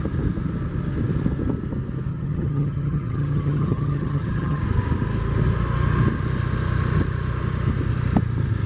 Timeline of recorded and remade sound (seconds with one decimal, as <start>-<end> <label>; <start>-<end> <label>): 0.0-2.1 recorded; 2.1-4.6 remade; 4.6-8.7 recorded